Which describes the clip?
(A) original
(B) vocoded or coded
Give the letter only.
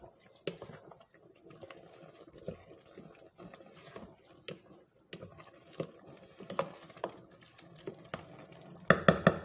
A